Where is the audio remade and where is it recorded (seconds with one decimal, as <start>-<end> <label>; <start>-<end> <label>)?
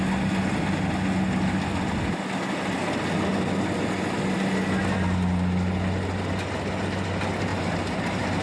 0.0-7.5 recorded; 7.5-8.4 remade